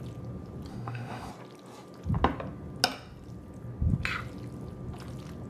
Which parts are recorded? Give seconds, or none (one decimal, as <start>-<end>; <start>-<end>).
0.0-0.7; 1.3-5.5